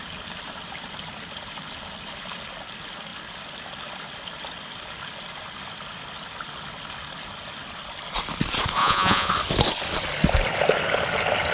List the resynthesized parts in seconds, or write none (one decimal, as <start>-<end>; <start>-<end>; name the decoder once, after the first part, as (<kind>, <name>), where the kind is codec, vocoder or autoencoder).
8.8-9.3 (vocoder, Vocos)